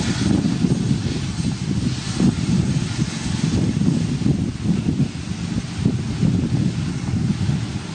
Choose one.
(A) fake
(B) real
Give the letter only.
B